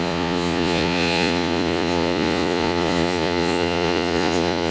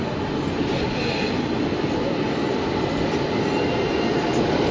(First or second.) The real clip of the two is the second